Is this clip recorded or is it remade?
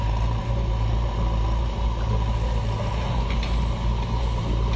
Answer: recorded